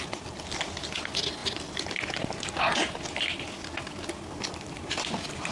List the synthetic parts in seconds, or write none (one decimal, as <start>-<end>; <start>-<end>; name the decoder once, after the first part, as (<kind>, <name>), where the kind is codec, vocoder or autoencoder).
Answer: 0.0-5.5 (vocoder, BigVGAN v2)